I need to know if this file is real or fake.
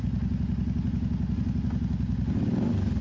real